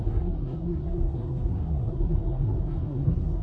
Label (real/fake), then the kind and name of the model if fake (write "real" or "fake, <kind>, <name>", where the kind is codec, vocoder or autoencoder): fake, codec, SNAC